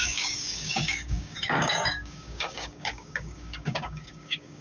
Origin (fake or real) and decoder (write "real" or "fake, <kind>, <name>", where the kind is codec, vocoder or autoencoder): fake, codec, DAC